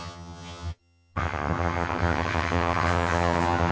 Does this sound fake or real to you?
fake